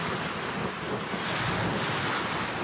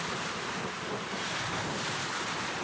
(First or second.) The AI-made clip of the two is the second